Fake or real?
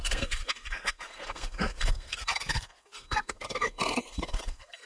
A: fake